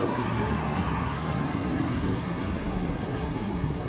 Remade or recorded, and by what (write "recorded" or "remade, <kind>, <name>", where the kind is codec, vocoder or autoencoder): remade, codec, SNAC